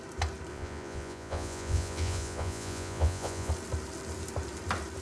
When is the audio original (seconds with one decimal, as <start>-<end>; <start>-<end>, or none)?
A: 0.0-0.5; 3.5-5.0